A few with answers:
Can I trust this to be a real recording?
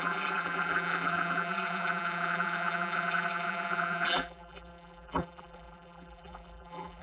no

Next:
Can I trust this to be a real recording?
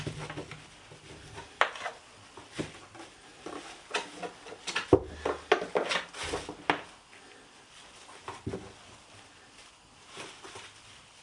yes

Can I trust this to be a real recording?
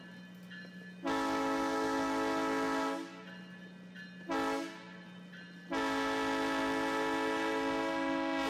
yes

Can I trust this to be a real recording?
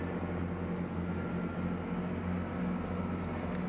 yes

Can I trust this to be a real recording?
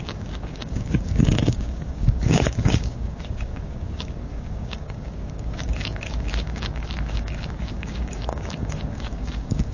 no